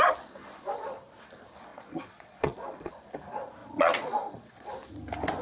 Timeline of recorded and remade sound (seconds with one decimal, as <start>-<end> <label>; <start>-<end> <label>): 0.0-1.7 recorded; 1.7-2.9 remade; 2.9-3.6 recorded; 3.6-4.7 remade; 4.7-5.4 recorded